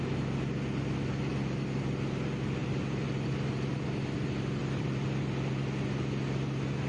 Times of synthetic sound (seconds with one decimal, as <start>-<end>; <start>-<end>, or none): 2.6-3.3; 4.6-5.5